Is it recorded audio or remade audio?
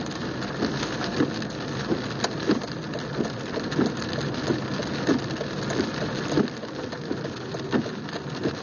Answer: recorded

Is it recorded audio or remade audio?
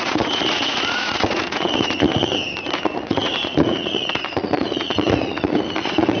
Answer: remade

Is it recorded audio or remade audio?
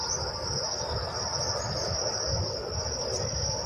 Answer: recorded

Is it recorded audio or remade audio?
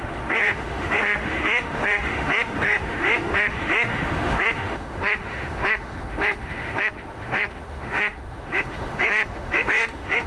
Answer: remade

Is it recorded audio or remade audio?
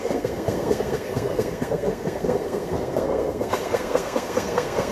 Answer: remade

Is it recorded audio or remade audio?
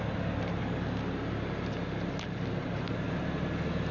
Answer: recorded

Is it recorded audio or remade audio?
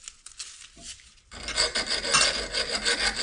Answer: recorded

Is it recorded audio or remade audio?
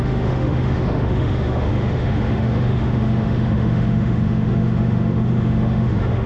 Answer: remade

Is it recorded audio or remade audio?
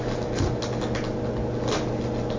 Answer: recorded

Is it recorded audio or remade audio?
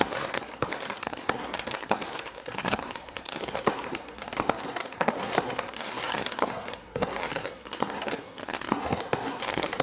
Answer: remade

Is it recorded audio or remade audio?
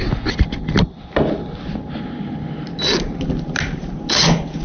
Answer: recorded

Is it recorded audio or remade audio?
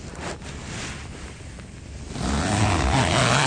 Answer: recorded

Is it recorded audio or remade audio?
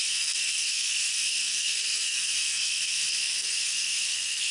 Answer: remade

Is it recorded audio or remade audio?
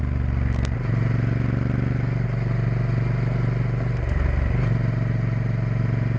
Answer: recorded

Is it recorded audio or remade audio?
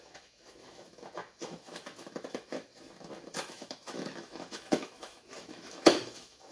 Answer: remade